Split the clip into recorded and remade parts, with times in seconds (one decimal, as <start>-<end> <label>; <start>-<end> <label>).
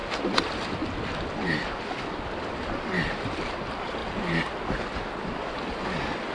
0.0-6.3 recorded